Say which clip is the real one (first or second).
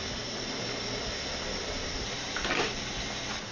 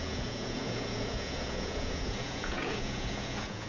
first